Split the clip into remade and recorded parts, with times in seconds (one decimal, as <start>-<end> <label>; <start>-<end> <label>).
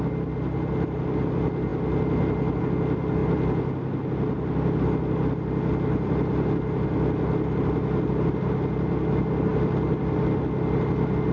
0.0-11.3 recorded